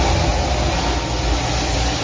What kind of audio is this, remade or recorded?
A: recorded